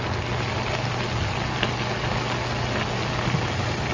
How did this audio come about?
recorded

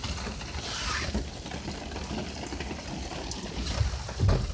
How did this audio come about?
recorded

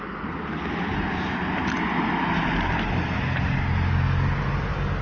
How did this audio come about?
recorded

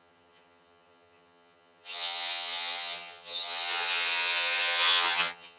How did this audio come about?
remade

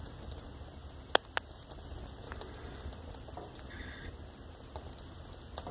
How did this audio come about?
recorded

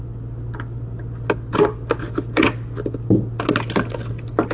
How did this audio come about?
recorded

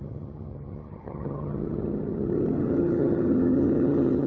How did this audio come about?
remade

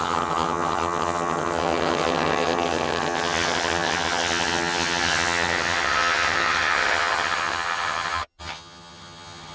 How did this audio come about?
remade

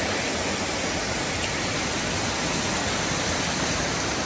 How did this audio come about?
recorded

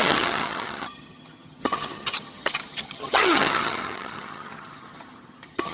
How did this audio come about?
remade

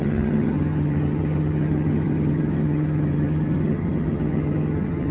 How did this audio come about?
remade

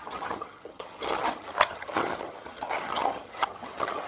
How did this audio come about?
remade